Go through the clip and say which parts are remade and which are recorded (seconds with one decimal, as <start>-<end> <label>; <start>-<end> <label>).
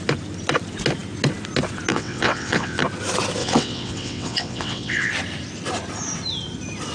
0.0-1.9 recorded; 1.9-2.8 remade; 2.8-3.4 recorded; 3.4-5.1 remade; 5.1-6.9 recorded